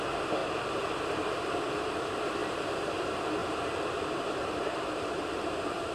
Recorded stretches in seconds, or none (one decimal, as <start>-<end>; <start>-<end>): 0.0-0.4; 1.3-3.4